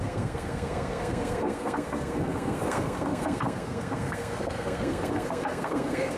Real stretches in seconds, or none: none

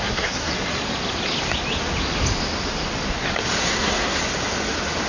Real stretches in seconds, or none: 0.5-3.6; 4.2-5.1

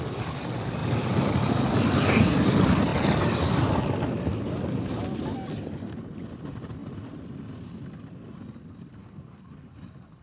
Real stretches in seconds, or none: 0.0-10.2

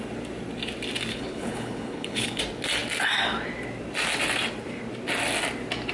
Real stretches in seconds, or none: 0.0-1.1; 2.4-5.9